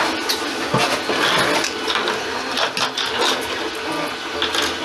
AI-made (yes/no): no